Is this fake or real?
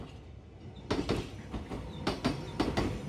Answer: real